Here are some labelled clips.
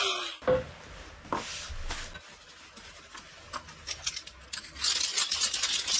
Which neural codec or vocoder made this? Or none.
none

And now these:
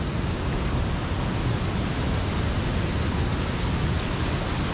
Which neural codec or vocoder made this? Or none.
none